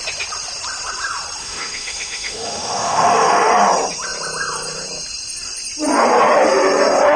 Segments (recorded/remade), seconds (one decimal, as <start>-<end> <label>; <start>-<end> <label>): 0.0-1.4 recorded; 1.4-3.5 remade; 3.5-7.2 recorded